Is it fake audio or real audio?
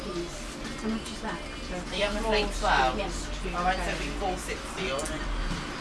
real